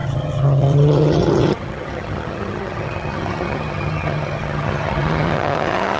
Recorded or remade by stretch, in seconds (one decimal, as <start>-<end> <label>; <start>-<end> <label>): 0.0-6.0 remade